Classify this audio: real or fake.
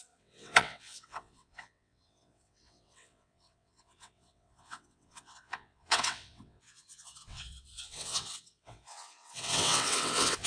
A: fake